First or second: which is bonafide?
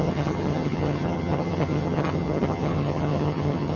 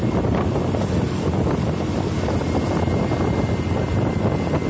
second